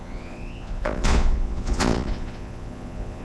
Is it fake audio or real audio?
fake